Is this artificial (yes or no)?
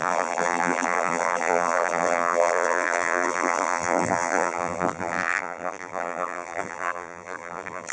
yes